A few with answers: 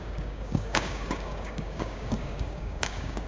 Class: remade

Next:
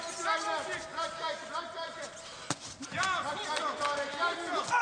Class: recorded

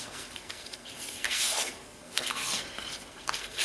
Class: remade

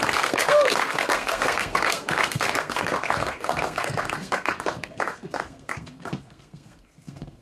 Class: remade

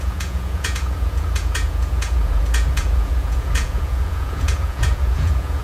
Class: remade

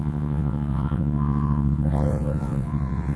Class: remade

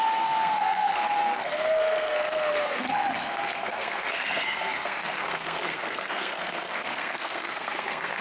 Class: remade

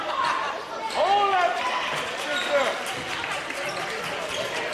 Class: recorded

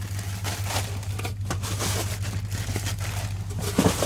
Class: recorded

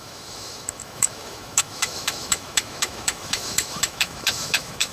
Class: remade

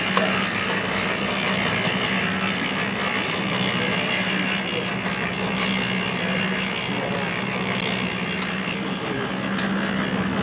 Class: recorded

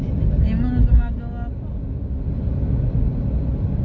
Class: recorded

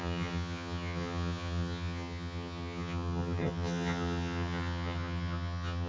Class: remade